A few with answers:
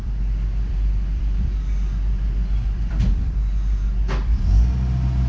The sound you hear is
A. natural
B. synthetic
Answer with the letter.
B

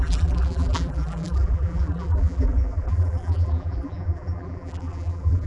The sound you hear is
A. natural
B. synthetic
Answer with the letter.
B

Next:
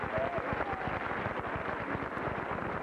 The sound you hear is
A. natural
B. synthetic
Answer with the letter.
A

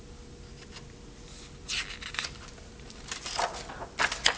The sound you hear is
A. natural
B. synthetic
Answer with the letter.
A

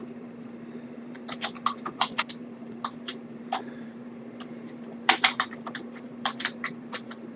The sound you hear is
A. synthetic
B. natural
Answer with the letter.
A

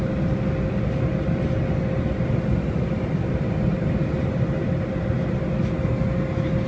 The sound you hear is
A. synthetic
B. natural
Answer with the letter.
B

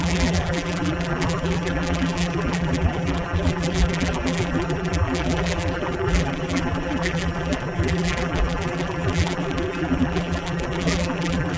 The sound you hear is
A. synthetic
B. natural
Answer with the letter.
A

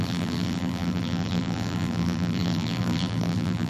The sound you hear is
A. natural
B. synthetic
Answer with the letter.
B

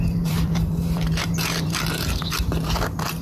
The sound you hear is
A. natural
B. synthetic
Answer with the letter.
B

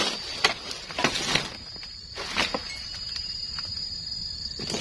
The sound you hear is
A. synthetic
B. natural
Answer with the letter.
B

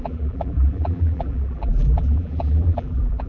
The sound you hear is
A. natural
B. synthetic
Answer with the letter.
B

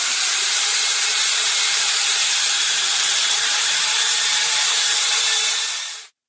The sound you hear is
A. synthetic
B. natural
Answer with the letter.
A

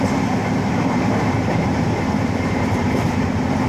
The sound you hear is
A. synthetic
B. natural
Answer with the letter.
A